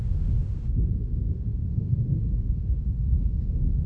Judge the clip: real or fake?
fake